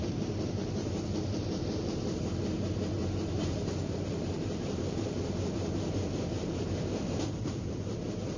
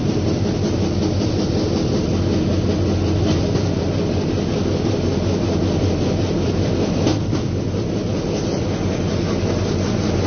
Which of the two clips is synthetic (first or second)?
first